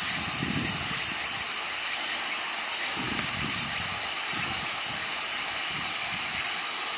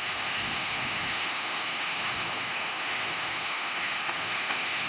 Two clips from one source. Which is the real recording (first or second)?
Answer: first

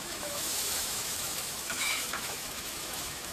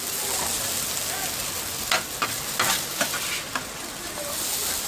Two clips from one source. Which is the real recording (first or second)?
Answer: second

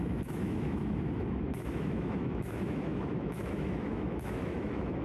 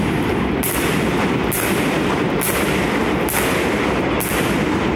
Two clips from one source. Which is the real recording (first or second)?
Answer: second